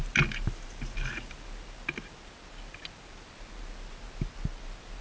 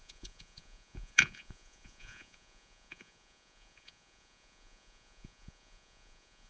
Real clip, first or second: first